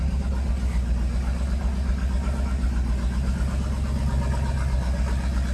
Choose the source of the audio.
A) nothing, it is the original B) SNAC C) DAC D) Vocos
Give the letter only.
A